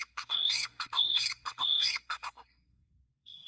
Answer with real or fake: fake